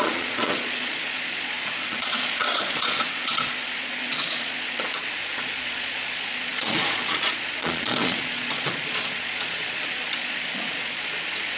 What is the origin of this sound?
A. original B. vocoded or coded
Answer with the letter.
B